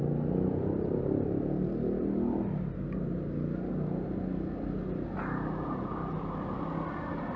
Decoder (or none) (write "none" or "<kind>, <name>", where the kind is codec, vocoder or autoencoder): none